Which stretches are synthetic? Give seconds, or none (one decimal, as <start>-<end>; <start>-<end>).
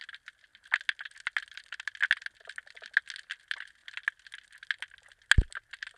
none